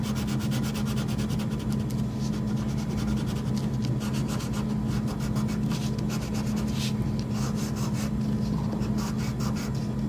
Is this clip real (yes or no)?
yes